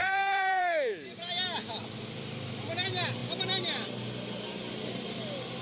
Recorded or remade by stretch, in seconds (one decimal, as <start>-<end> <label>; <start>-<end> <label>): 0.0-1.3 remade; 1.3-5.6 recorded